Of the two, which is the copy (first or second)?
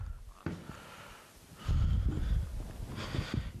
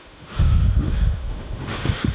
second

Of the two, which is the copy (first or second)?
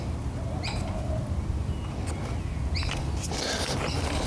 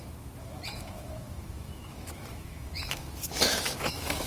second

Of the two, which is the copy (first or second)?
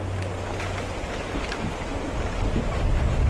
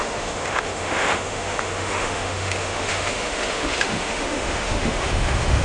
second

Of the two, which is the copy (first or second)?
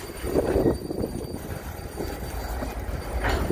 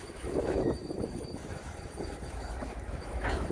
second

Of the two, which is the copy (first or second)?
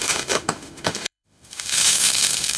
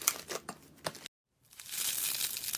first